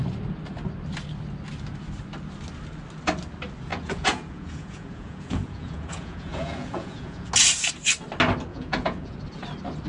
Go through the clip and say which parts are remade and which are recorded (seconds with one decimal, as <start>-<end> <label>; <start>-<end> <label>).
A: 0.0-3.7 recorded; 3.7-7.3 remade; 7.3-8.5 recorded; 8.5-9.2 remade; 9.2-9.9 recorded